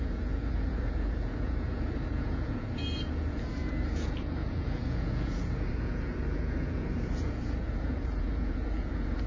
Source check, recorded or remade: remade